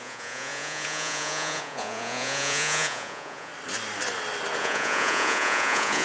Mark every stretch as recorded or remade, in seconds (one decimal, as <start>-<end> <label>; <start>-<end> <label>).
0.0-3.5 remade; 3.5-4.6 recorded; 4.6-6.0 remade